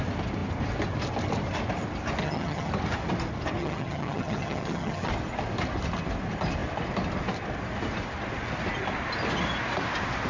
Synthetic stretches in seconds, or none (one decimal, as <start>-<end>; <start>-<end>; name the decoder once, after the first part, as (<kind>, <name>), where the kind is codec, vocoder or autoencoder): 2.2-2.7 (vocoder, HiFi-GAN); 3.6-5.1